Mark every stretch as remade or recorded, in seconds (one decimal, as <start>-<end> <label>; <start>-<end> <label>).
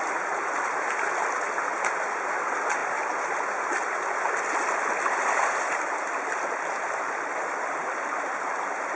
0.0-9.0 recorded